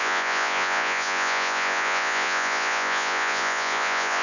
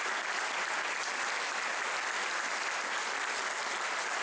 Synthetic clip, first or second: first